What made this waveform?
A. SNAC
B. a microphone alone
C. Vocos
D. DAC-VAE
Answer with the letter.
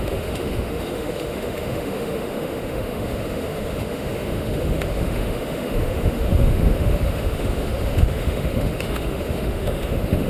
D